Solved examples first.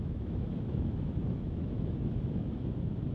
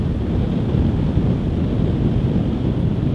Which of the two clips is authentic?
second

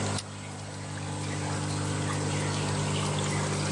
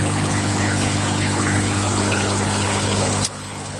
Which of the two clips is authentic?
first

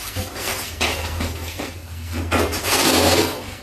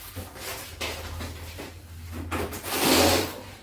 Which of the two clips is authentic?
second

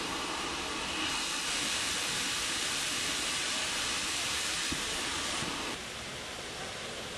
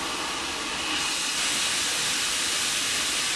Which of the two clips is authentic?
second